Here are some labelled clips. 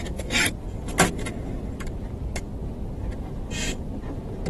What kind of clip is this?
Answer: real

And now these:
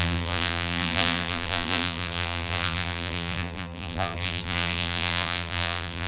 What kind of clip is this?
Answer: fake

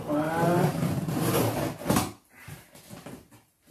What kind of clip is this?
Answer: real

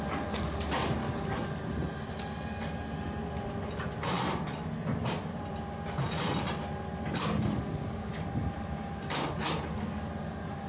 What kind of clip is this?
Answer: real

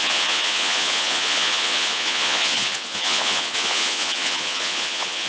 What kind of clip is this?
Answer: fake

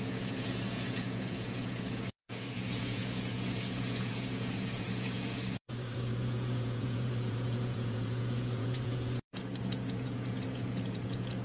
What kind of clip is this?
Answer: fake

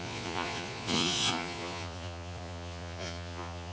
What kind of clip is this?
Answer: fake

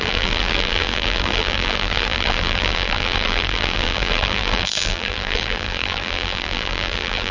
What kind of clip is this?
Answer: fake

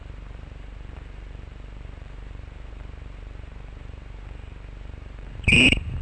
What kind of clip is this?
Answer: fake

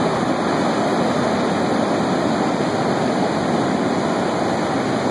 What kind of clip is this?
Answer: real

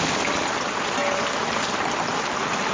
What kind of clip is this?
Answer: real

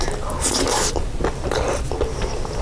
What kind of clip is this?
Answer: fake